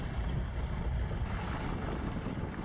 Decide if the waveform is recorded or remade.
recorded